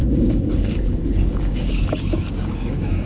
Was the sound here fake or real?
fake